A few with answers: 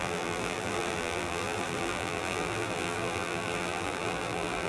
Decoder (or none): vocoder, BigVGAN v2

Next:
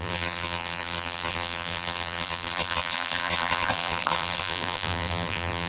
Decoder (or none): vocoder, BigVGAN v2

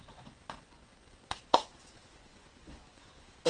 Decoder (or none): vocoder, Vocos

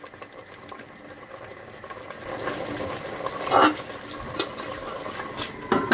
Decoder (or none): none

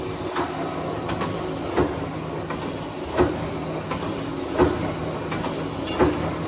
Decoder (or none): none